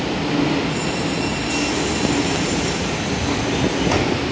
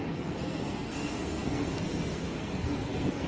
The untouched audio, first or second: first